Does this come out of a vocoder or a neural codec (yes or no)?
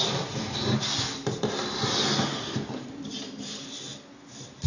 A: no